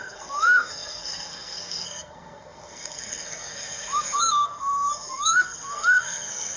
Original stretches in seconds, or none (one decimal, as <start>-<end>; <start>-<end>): none